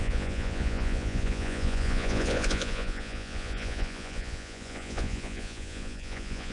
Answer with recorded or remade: remade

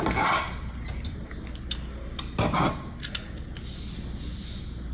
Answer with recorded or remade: recorded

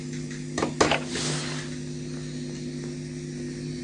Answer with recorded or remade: recorded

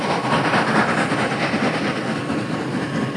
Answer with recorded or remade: recorded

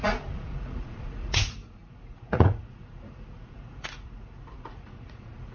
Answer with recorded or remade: remade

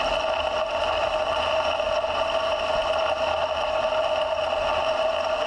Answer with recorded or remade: recorded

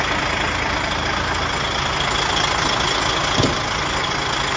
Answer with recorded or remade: recorded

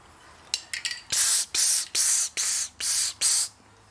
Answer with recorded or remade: recorded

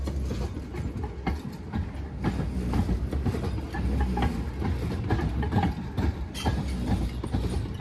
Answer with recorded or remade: recorded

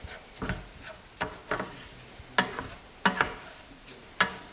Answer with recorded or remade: recorded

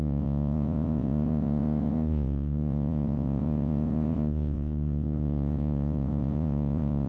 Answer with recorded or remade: remade